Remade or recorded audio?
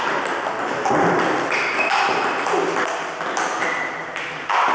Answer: recorded